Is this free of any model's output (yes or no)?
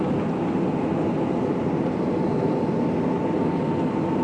yes